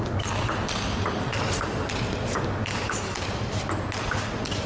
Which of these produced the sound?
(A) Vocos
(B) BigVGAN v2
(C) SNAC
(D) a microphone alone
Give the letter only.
D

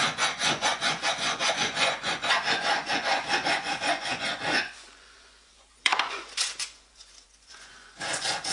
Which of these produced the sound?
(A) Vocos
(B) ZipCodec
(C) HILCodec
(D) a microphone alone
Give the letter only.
A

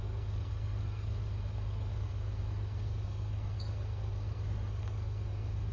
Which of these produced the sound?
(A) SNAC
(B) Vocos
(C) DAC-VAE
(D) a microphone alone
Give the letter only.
A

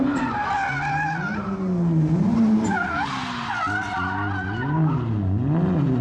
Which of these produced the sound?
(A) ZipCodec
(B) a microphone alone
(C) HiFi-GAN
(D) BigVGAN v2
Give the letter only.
B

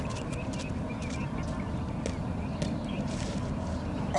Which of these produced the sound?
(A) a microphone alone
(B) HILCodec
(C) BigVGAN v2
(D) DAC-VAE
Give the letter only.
A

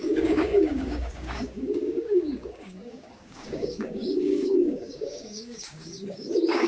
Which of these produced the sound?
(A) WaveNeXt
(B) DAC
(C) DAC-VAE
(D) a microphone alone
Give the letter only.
B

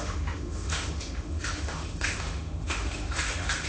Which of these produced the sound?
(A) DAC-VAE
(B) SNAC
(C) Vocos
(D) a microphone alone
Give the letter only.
A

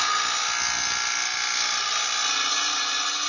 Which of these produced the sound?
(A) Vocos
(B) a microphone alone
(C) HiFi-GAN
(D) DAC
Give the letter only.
B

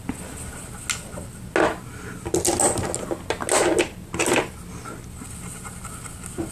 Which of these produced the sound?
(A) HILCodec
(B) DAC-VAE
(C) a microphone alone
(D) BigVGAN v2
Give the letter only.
C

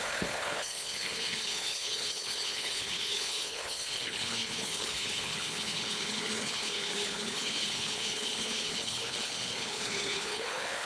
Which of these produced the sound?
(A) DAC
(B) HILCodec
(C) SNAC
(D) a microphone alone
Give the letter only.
B